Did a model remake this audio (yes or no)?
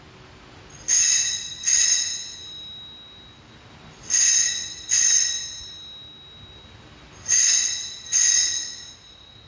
no